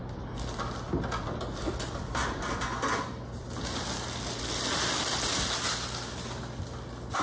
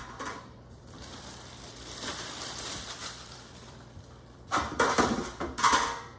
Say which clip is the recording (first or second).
first